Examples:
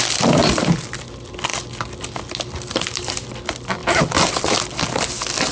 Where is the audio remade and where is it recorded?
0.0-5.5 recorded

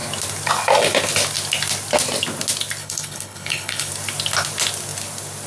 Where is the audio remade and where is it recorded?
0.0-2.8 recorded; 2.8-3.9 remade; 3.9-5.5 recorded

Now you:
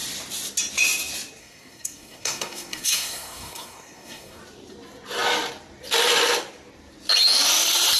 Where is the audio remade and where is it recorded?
0.0-1.4 recorded; 1.4-4.4 remade; 4.4-8.0 recorded

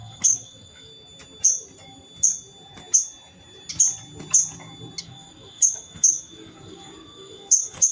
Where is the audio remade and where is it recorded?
0.0-0.9 remade; 0.9-5.0 recorded; 5.0-7.9 remade